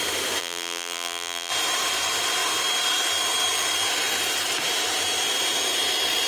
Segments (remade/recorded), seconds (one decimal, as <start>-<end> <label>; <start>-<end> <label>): 0.0-0.4 recorded; 0.4-1.5 remade; 1.5-6.3 recorded